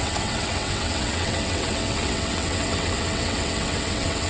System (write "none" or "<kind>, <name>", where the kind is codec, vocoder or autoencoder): vocoder, WaveNeXt